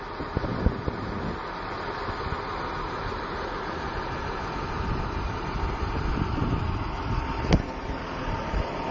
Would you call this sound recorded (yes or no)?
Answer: yes